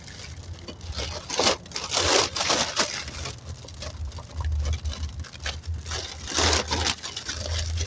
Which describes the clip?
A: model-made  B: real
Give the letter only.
B